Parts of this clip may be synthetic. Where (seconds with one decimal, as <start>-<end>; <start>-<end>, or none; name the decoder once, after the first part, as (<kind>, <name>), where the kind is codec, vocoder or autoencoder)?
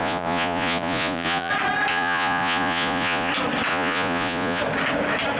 0.0-1.5 (vocoder, Vocos); 1.9-3.3; 3.7-4.6